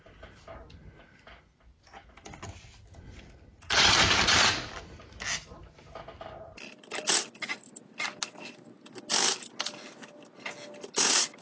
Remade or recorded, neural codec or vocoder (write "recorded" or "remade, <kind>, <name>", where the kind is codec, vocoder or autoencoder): recorded